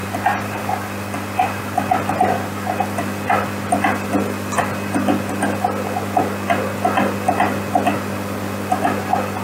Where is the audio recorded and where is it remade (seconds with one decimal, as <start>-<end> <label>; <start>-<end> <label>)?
0.0-0.7 remade; 0.7-9.4 recorded